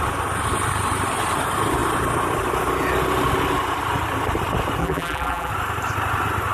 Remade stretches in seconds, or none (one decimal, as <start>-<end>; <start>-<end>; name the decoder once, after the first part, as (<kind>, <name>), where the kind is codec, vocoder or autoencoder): 4.8-5.5 (vocoder, BigVGAN v2)